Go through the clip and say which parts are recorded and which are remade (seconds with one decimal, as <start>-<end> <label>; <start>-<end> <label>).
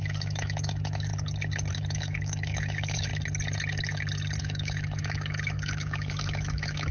0.0-1.1 remade; 1.1-1.7 recorded; 1.7-3.1 remade; 3.1-4.4 recorded; 4.4-6.9 remade